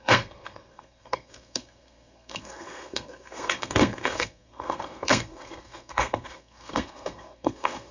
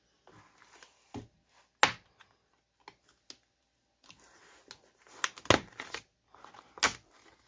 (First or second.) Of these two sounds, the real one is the second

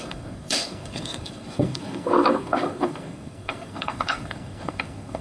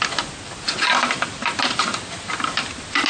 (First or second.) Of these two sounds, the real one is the second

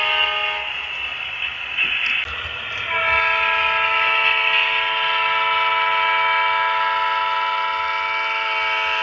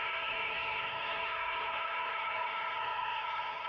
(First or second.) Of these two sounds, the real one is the first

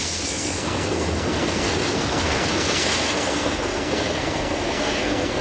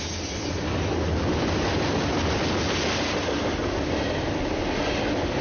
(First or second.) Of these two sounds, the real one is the second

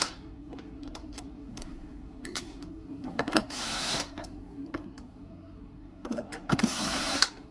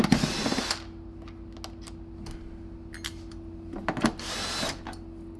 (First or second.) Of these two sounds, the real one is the second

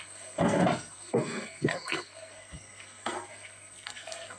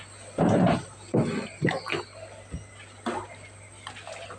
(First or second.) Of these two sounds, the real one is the second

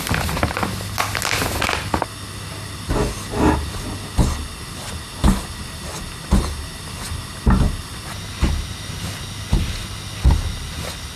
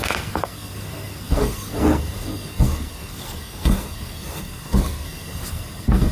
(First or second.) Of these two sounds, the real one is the first